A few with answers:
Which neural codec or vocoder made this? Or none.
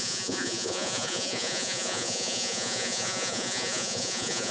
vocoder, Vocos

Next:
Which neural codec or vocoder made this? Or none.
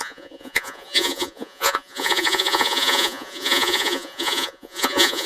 vocoder, Vocos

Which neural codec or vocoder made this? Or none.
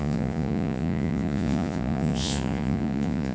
vocoder, Vocos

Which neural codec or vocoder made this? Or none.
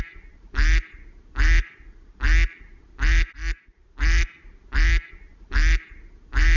none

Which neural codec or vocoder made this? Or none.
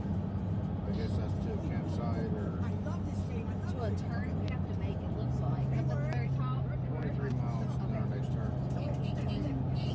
none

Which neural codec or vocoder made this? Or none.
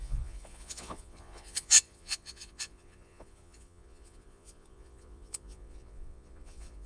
vocoder, Vocos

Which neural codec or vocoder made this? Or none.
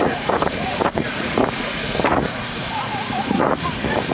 vocoder, Vocos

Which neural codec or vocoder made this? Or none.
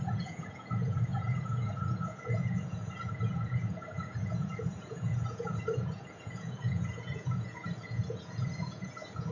vocoder, Vocos